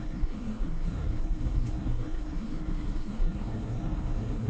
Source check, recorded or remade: remade